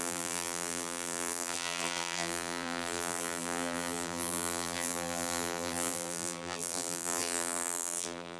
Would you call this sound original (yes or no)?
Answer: no